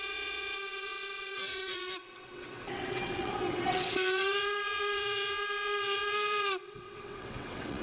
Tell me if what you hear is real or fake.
fake